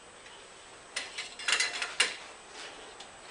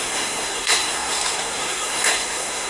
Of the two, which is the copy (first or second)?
second